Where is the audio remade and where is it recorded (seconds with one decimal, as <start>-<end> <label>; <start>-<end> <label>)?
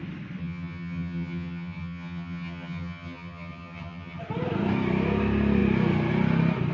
0.0-0.4 recorded; 0.4-4.2 remade; 4.2-6.7 recorded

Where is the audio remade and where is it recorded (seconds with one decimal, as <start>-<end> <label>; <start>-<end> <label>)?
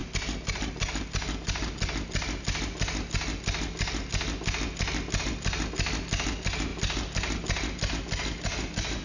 0.0-9.0 recorded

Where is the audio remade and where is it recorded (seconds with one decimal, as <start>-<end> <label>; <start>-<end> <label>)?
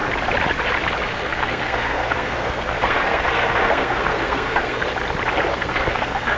0.0-1.1 recorded; 1.1-4.9 remade; 4.9-5.5 recorded; 5.5-6.4 remade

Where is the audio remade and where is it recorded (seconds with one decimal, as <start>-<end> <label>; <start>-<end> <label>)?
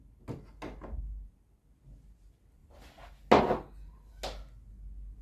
0.0-5.2 recorded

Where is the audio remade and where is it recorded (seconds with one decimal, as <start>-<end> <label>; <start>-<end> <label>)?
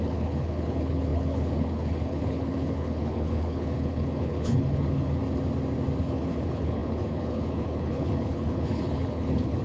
0.0-5.2 remade; 5.2-6.0 recorded; 6.0-9.6 remade